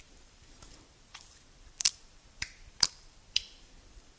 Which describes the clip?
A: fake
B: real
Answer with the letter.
A